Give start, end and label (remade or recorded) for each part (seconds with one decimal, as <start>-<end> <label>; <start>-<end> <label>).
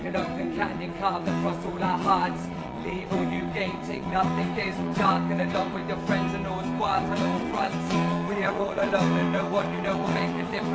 0.0-5.8 remade; 5.8-6.8 recorded; 6.8-10.7 remade